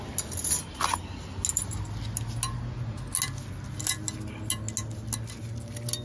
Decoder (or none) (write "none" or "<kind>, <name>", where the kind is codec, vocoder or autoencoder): none